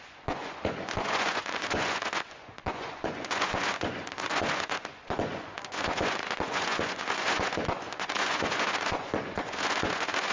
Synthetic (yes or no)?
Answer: yes